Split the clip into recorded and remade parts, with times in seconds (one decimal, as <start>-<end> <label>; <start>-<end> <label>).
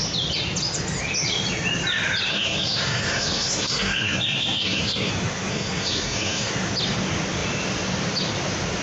0.0-2.3 recorded; 2.3-5.1 remade; 5.1-5.5 recorded; 5.5-6.5 remade; 6.5-8.8 recorded